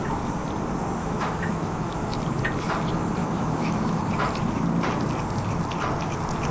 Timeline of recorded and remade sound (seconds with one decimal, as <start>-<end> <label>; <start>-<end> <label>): 0.0-1.0 recorded; 1.0-2.2 remade; 2.2-3.2 recorded; 3.2-4.0 remade; 4.0-6.5 recorded